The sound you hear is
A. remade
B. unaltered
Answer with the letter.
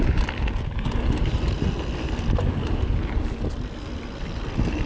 B